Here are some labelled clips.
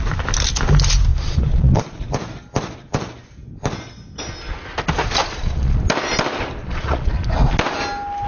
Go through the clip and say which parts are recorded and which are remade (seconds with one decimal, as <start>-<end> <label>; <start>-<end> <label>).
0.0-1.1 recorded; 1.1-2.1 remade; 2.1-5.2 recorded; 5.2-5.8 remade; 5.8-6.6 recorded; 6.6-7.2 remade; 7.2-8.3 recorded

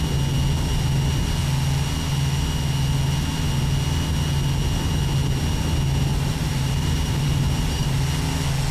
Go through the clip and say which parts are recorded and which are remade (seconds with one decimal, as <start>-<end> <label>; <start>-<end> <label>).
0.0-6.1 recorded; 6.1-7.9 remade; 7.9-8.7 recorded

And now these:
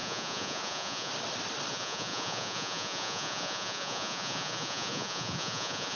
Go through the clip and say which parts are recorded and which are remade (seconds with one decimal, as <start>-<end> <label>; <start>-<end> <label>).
0.0-1.1 remade; 1.1-1.7 recorded; 1.7-6.0 remade

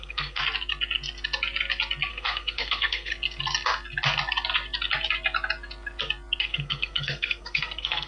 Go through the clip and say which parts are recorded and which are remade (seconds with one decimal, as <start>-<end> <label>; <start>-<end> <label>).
0.0-0.4 remade; 0.4-2.1 recorded; 2.1-3.1 remade; 3.1-6.4 recorded; 6.4-8.1 remade